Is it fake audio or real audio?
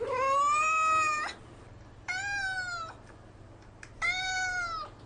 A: real